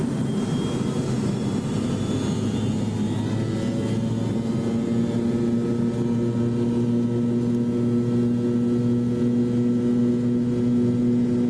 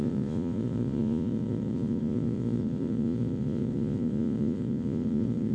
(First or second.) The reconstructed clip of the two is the second